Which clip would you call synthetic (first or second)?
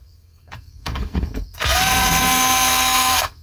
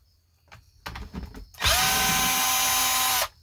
first